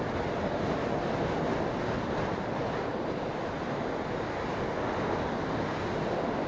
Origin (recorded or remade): recorded